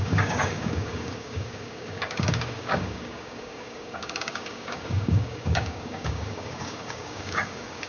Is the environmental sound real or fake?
fake